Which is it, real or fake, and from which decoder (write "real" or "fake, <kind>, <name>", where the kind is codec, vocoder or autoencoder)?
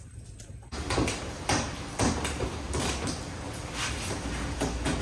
real